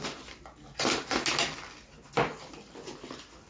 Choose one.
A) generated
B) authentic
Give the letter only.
B